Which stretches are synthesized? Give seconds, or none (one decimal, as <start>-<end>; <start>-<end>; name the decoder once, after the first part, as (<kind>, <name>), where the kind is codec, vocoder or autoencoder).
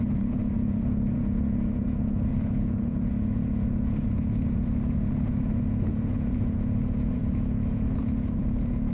0.0-8.9 (vocoder, Vocos)